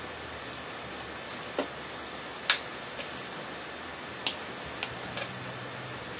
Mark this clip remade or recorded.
recorded